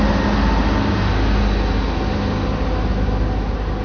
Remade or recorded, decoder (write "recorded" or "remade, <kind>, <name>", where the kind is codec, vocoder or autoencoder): recorded